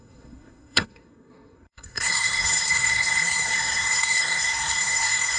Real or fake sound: fake